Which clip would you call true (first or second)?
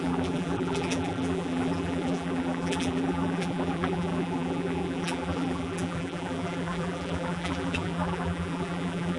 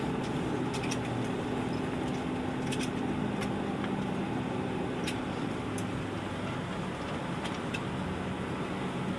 second